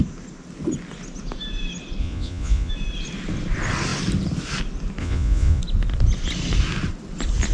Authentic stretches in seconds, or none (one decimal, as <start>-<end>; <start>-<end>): 0.0-2.0; 2.7-5.0; 5.6-7.5